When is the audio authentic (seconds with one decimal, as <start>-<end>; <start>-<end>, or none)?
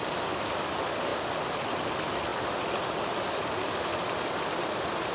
1.1-1.9; 2.3-5.1